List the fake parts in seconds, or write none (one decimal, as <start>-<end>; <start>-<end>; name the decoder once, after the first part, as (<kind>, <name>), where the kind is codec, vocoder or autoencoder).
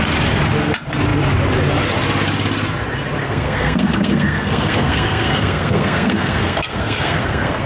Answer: 3.2-7.7 (codec, SNAC)